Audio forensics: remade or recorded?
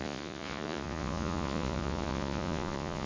remade